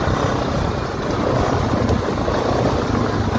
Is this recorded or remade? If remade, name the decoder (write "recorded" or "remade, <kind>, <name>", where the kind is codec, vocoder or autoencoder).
recorded